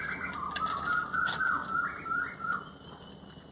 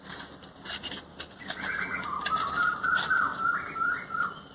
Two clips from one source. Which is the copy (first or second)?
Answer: second